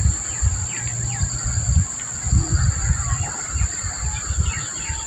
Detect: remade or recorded remade